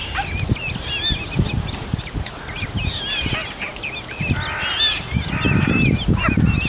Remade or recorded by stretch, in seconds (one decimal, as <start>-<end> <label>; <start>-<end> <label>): 0.0-6.7 recorded